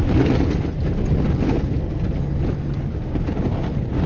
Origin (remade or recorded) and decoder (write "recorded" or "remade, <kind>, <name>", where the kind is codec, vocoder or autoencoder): recorded